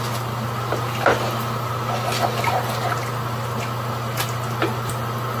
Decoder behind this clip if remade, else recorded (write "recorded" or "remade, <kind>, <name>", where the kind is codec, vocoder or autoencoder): recorded